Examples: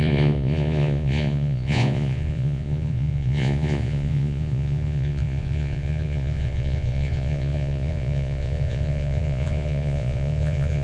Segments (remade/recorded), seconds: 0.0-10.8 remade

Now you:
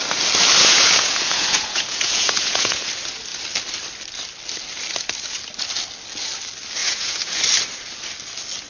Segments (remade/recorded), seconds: 0.0-0.6 recorded; 0.6-2.9 remade; 2.9-6.8 recorded; 6.8-7.4 remade; 7.4-8.7 recorded

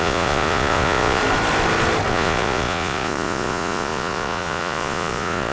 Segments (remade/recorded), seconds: 0.0-1.2 remade; 1.2-2.1 recorded; 2.1-5.5 remade